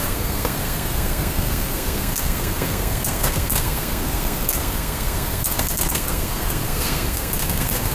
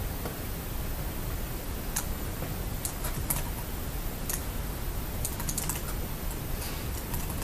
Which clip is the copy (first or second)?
first